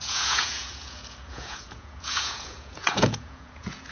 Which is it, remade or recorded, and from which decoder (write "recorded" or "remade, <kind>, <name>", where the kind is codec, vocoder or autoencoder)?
remade, vocoder, Vocos